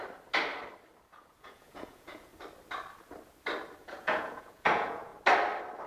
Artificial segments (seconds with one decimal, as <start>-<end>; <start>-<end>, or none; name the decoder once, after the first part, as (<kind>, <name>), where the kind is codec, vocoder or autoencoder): 1.1-2.3 (vocoder, Vocos); 3.8-5.1